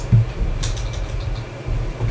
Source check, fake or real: real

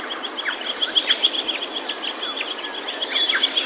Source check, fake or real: real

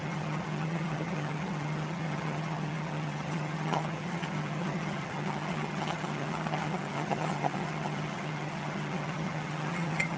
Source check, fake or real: fake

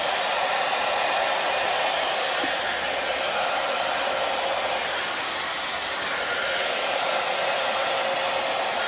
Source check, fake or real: real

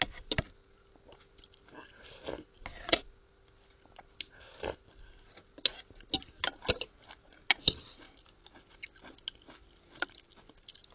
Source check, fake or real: real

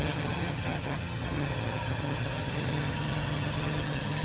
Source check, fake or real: fake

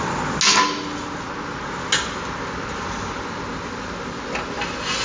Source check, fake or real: real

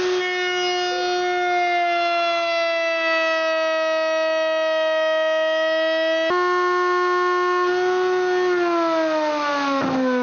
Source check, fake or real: real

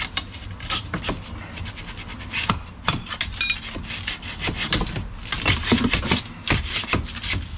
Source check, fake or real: real